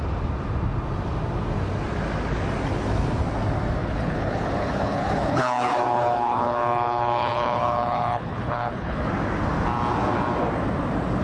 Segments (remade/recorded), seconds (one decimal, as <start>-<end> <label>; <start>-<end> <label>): 0.0-3.8 recorded; 3.8-9.1 remade; 9.1-11.2 recorded